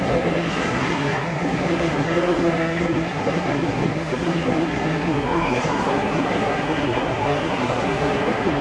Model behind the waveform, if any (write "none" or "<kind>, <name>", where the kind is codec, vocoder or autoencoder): codec, SNAC